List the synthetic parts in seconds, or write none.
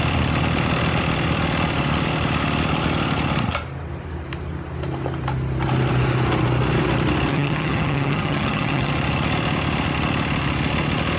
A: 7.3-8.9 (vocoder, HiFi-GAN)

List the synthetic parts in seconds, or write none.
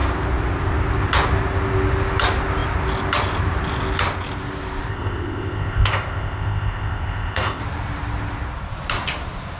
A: 4.9-7.6 (codec, ZipCodec)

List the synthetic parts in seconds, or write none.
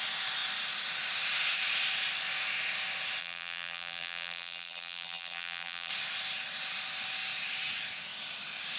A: 3.2-5.9 (vocoder, BigVGAN v2)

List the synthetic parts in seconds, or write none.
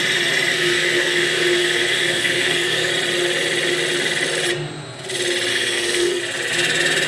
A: 0.5-2.9 (codec, SNAC); 5.5-6.2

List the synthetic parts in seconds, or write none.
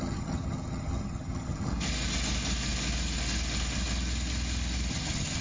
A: 0.0-1.7 (vocoder, HiFi-GAN); 4.9-5.4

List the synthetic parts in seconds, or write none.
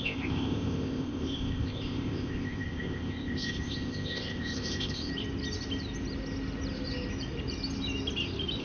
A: 0.0-5.1 (codec, ZipCodec)